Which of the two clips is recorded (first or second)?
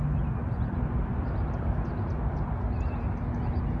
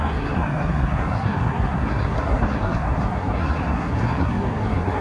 first